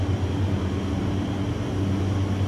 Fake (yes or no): no